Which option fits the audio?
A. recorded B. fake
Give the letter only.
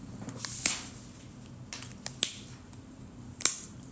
A